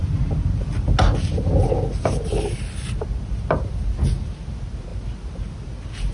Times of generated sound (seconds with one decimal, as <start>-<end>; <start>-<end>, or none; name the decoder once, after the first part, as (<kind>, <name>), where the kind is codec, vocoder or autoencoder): none